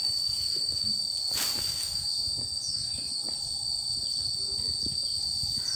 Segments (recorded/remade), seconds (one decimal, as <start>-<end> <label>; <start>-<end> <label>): 0.0-0.9 remade; 0.9-1.6 recorded; 1.6-2.1 remade; 2.1-2.7 recorded; 2.7-3.2 remade; 3.2-5.8 recorded